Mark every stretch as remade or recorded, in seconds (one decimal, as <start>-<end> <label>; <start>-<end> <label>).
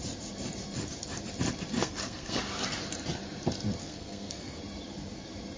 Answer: 0.0-1.8 recorded; 1.8-2.4 remade; 2.4-3.8 recorded; 3.8-4.6 remade; 4.6-5.6 recorded